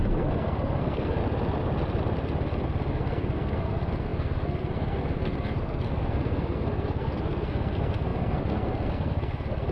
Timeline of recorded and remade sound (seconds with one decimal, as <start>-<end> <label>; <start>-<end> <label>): 0.0-1.2 remade; 1.2-2.9 recorded; 2.9-9.7 remade